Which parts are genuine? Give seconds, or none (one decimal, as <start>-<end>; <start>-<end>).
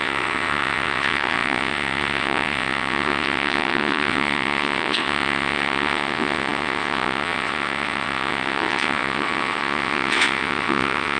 none